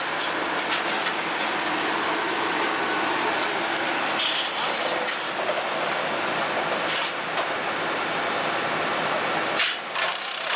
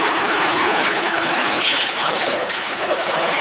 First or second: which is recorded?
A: first